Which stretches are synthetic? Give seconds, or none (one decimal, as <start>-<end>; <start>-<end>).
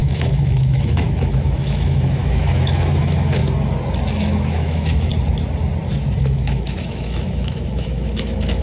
0.0-3.4; 4.2-5.1; 6.2-8.6